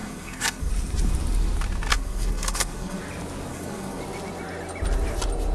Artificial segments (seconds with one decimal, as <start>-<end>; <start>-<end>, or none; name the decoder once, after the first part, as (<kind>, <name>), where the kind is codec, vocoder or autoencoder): 0.0-0.7 (codec, SNAC); 1.9-3.0; 3.5-4.0